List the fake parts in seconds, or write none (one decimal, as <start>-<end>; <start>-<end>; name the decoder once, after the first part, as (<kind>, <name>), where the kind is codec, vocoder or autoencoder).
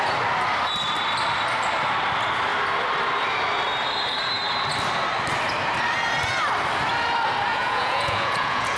7.5-8.8 (vocoder, Vocos)